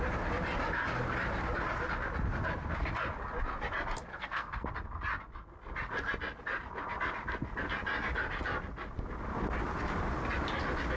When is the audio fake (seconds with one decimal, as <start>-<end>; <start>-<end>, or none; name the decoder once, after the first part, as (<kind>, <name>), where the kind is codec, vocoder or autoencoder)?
4.1-4.7 (codec, SNAC)